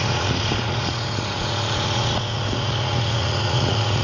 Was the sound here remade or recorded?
remade